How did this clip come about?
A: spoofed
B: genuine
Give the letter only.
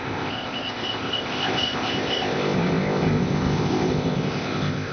A